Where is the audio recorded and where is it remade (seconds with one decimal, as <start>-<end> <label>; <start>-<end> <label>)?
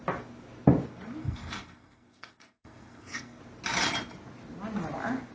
0.0-1.2 recorded; 1.2-3.4 remade; 3.4-5.3 recorded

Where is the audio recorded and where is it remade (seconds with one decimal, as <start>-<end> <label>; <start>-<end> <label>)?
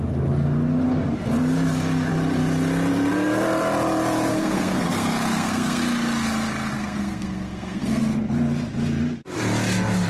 0.0-4.3 recorded; 4.3-5.8 remade; 5.8-6.7 recorded; 6.7-8.0 remade; 8.0-10.1 recorded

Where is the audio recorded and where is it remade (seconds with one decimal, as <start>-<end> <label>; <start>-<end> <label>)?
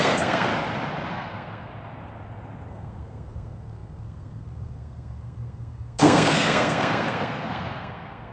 0.0-0.5 remade; 0.5-1.1 recorded; 1.1-1.7 remade; 1.7-2.7 recorded; 2.7-8.3 remade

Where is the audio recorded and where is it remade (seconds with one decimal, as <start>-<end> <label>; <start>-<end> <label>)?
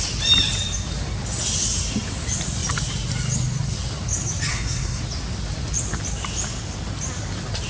0.0-4.5 recorded; 4.5-5.0 remade; 5.0-7.7 recorded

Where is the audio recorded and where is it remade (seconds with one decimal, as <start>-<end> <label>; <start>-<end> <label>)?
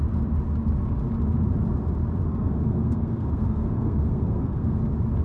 0.0-2.3 recorded; 2.3-4.8 remade; 4.8-5.2 recorded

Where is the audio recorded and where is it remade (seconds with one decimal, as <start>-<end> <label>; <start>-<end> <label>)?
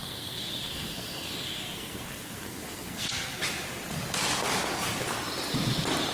0.0-3.4 remade; 3.4-6.1 recorded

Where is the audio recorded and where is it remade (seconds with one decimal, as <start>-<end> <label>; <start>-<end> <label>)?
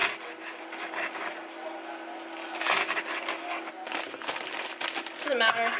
0.0-5.8 recorded